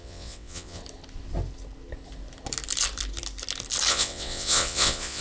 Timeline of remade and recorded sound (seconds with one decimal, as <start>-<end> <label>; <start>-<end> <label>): 0.0-0.8 remade; 0.8-3.9 recorded; 3.9-5.2 remade